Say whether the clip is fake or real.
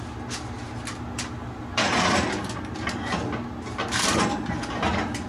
real